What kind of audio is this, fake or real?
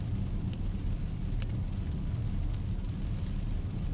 real